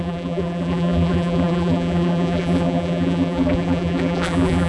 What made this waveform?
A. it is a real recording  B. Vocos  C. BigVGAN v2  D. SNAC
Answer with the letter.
C